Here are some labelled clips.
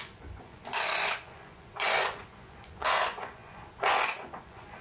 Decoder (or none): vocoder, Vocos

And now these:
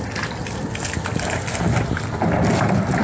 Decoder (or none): none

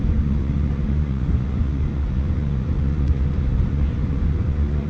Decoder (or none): vocoder, Vocos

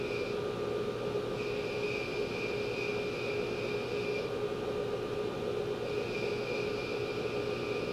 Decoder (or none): none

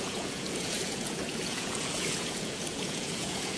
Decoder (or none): vocoder, Vocos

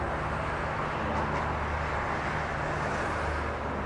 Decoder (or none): none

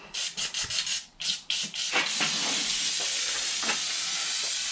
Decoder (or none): none